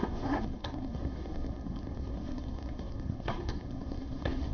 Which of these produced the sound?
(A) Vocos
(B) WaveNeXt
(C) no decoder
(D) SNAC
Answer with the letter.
D